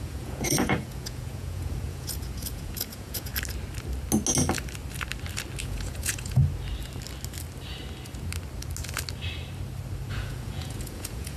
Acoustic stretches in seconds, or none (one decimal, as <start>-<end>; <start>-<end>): 3.3-5.6; 6.4-10.1